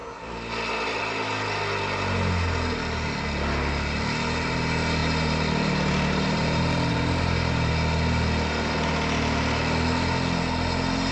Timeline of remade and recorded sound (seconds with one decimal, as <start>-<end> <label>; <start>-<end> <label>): 0.0-5.0 recorded; 5.0-7.7 remade; 7.7-11.1 recorded